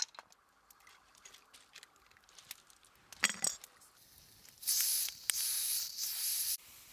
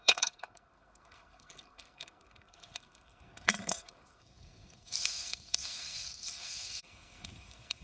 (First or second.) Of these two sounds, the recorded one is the first